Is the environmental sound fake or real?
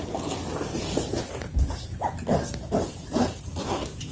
real